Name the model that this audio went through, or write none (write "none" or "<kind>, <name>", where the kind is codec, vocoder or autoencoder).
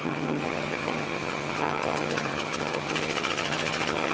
vocoder, HiFi-GAN